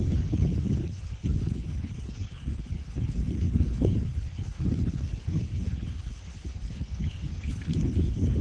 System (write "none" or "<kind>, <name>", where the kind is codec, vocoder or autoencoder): codec, HILCodec